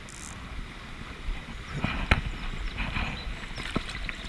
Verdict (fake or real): real